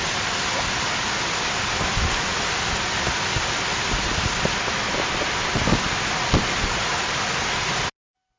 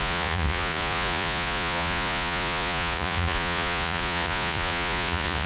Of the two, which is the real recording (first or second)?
first